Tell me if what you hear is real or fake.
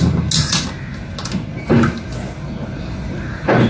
real